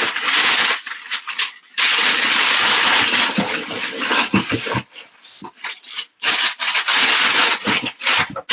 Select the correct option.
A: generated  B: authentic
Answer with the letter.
B